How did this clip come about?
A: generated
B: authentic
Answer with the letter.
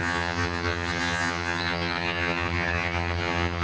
A